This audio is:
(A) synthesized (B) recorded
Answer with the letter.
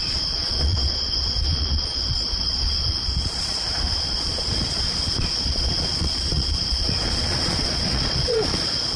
A